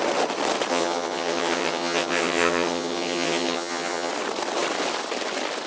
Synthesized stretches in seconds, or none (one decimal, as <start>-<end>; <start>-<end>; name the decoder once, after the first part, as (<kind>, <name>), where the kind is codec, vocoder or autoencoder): 0.7-4.1 (vocoder, HiFi-GAN)